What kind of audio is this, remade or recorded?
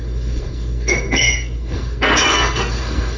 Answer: remade